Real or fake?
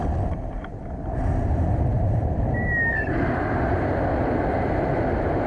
real